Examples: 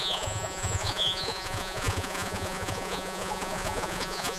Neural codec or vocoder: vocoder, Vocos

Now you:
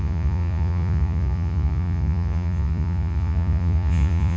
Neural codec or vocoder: vocoder, Vocos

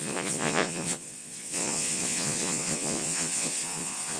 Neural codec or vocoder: vocoder, Vocos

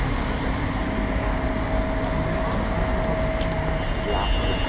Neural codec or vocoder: none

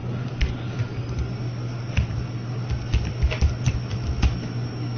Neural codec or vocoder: none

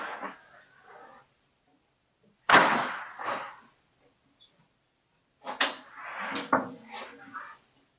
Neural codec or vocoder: none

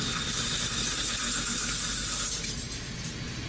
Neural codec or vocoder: none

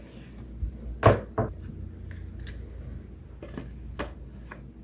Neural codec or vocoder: none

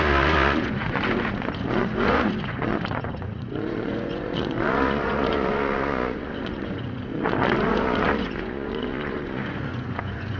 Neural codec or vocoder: vocoder, Vocos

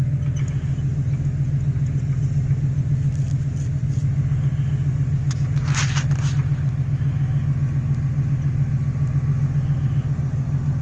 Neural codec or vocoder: none